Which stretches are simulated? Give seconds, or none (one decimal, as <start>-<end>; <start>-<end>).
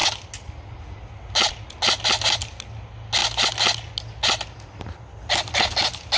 none